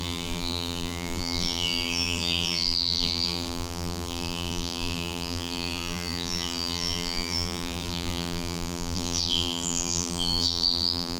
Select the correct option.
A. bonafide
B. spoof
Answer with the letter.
B